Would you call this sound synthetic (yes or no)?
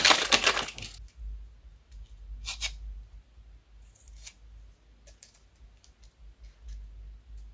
no